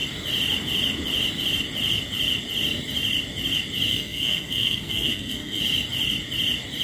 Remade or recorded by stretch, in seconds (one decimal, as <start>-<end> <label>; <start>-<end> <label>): 0.0-3.9 recorded; 3.9-5.6 remade; 5.6-6.8 recorded